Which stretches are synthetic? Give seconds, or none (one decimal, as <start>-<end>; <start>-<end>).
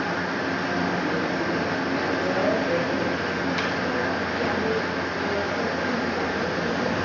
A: none